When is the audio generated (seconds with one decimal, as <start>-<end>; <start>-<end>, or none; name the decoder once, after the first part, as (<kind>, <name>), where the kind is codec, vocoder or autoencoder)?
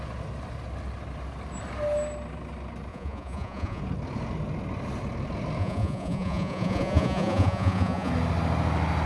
2.9-3.8 (vocoder, Vocos); 5.6-8.1